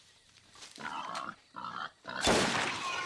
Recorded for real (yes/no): no